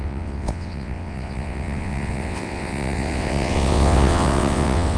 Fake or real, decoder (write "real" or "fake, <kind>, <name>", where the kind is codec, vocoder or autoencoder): fake, vocoder, WaveNeXt